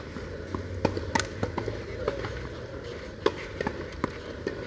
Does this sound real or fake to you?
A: real